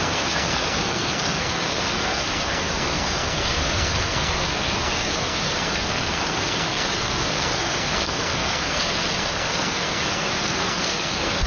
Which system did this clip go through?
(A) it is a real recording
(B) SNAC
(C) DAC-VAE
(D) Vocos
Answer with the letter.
B